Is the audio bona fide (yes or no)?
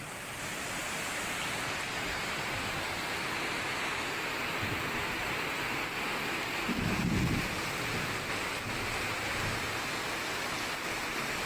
yes